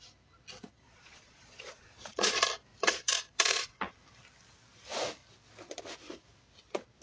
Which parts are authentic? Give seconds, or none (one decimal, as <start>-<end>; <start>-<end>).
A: 0.0-0.7; 2.3-2.7; 3.9-7.0